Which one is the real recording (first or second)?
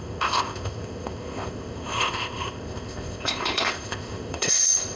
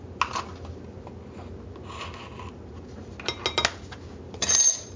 second